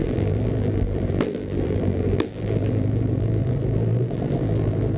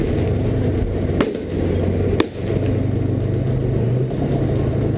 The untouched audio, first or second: second